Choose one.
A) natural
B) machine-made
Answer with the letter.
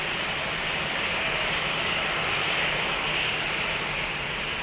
A